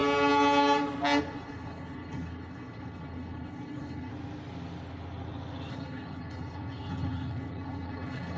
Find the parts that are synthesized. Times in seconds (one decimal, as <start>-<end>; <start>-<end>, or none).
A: 1.2-4.1; 5.7-8.4